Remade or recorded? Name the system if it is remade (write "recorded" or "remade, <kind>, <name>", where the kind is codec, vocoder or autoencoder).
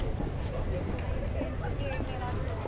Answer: recorded